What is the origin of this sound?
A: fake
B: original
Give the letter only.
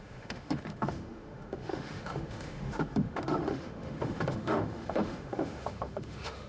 A